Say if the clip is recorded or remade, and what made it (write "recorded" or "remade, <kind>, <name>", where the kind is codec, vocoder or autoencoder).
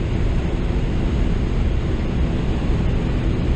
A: recorded